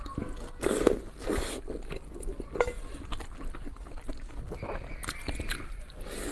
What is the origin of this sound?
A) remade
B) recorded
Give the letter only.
B